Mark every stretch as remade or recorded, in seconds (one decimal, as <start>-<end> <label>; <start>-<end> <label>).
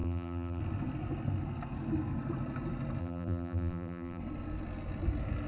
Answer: 0.0-0.6 remade; 0.6-3.0 recorded; 3.0-4.2 remade; 4.2-5.5 recorded